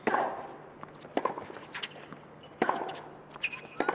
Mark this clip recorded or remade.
recorded